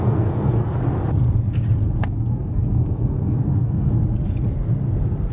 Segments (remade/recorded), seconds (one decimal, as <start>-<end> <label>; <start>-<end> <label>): 0.0-0.8 remade; 0.8-2.0 recorded; 2.0-3.9 remade; 3.9-5.3 recorded